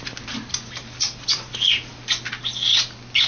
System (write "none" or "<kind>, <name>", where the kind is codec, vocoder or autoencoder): none